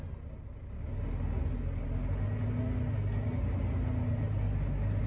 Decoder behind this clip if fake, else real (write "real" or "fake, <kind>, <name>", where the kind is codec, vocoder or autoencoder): real